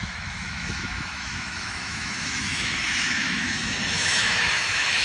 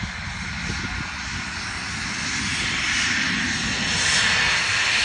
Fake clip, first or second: first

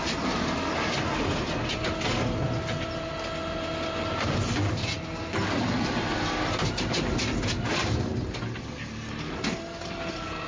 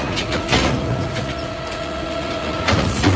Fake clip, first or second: second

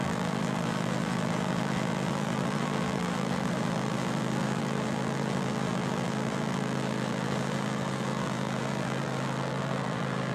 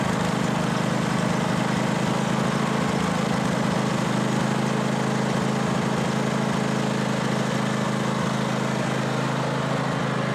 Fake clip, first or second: first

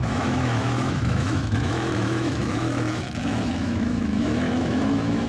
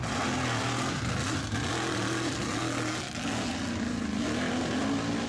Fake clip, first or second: first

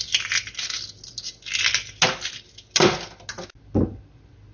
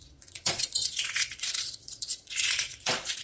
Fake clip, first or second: second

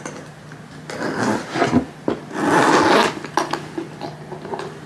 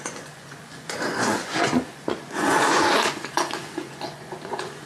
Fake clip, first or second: second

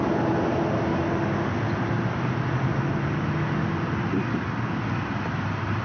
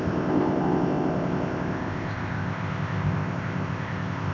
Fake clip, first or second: second